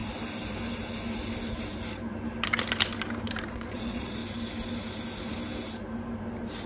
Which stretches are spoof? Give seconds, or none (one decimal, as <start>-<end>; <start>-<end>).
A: 3.5-4.2